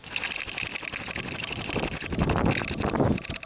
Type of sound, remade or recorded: recorded